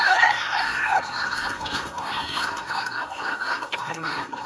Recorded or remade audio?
remade